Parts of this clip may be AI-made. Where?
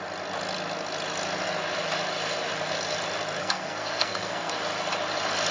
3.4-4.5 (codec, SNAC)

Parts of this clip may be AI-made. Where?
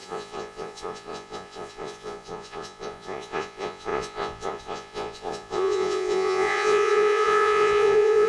0.0-8.3 (vocoder, Vocos)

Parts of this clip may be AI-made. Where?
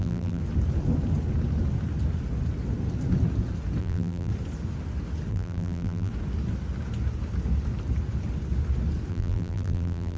0.0-0.4 (vocoder, BigVGAN v2); 3.8-4.3; 5.3-6.1; 9.1-10.2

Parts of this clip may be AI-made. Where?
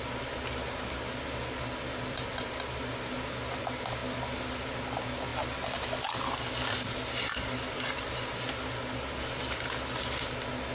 none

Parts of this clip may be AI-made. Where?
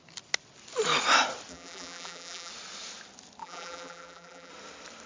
1.5-2.5 (vocoder, BigVGAN v2); 3.4-4.5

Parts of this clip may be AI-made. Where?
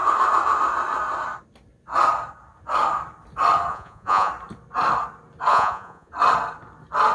3.7-4.3 (vocoder, Vocos); 5.5-6.1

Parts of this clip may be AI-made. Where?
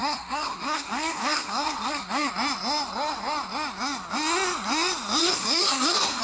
0.0-2.3 (codec, SNAC); 5.2-6.2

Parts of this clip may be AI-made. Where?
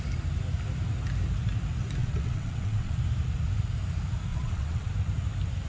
2.0-3.0 (vocoder, WaveNeXt); 4.3-4.9